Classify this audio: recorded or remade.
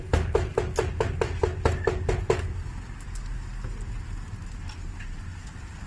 recorded